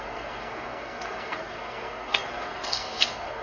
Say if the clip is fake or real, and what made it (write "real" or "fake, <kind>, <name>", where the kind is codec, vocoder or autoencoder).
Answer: fake, codec, SNAC